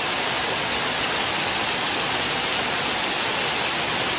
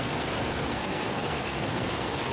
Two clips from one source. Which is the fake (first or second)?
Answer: second